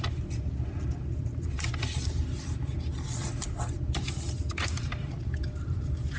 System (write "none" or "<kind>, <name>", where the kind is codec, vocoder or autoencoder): none